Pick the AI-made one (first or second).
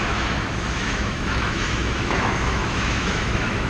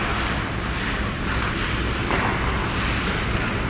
first